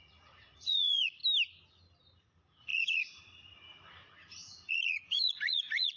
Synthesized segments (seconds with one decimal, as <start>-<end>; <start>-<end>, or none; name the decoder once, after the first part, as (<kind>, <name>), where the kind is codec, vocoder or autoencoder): 0.0-1.2 (vocoder, Vocos); 2.2-6.0